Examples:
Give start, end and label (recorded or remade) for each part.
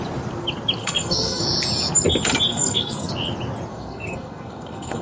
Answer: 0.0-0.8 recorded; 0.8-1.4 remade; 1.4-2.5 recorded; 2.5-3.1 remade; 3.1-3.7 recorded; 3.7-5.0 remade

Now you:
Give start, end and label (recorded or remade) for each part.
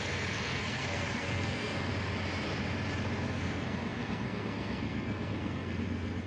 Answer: 0.0-1.9 remade; 1.9-3.3 recorded; 3.3-6.3 remade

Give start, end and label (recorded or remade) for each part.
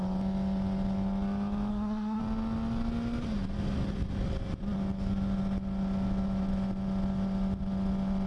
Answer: 0.0-1.7 recorded; 1.7-2.2 remade; 2.2-8.3 recorded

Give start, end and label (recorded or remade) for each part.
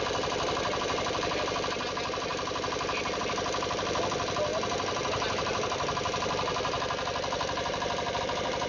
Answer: 0.0-8.7 recorded